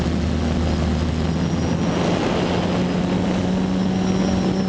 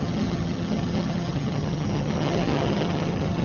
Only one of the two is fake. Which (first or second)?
second